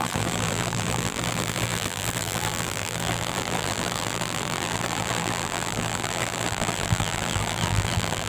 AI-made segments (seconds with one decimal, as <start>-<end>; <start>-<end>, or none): 0.0-8.3